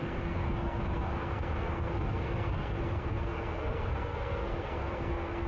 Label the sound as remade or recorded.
remade